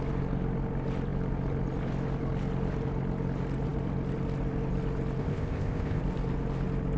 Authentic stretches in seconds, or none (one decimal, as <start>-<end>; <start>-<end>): 0.0-5.2; 6.0-7.0